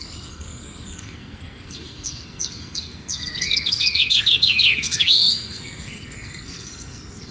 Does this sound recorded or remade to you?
remade